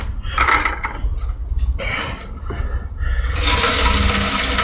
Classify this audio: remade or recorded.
recorded